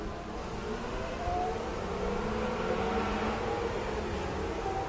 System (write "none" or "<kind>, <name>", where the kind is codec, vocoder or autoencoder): none